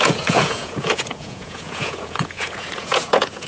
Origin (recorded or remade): remade